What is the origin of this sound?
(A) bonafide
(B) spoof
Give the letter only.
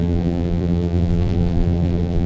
B